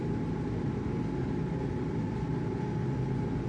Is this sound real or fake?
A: real